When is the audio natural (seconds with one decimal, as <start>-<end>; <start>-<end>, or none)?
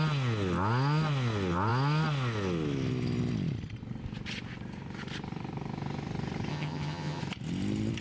0.0-6.5; 7.2-8.0